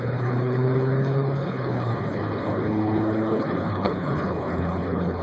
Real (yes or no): no